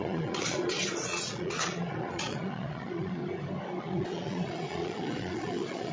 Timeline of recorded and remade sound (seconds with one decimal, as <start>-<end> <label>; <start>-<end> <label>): 0.0-3.2 remade; 3.2-3.8 recorded; 3.8-5.9 remade